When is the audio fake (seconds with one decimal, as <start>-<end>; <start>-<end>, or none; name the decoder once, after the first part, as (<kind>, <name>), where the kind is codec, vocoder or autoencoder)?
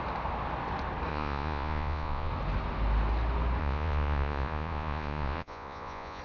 1.1-2.3 (vocoder, Vocos); 3.6-6.2